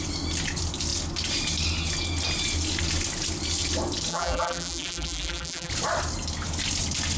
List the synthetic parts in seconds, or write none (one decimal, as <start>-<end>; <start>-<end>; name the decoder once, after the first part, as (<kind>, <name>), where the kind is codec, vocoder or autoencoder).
4.1-5.7 (vocoder, BigVGAN v2)